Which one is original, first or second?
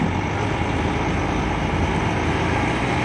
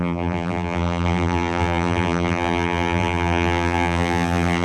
first